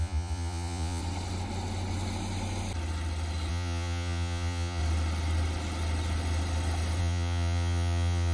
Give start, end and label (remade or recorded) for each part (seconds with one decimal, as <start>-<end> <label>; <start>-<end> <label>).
0.0-1.0 remade; 1.0-3.5 recorded; 3.5-4.8 remade; 4.8-7.0 recorded; 7.0-8.3 remade

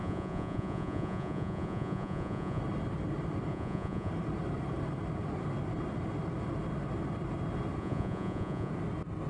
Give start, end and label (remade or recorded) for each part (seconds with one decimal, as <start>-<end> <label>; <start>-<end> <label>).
0.0-2.6 remade; 2.6-3.5 recorded; 3.5-4.1 remade; 4.1-7.8 recorded; 7.8-8.7 remade; 8.7-9.3 recorded

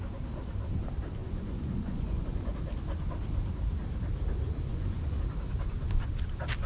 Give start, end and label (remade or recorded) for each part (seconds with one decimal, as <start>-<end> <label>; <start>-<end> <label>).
0.0-1.2 recorded; 1.2-2.5 remade; 2.5-4.7 recorded; 4.7-5.2 remade; 5.2-6.7 recorded